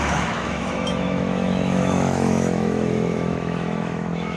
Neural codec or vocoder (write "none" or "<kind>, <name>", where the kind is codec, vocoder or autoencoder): autoencoder, DAC-VAE